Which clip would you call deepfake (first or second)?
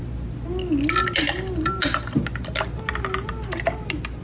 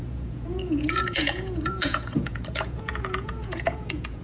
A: second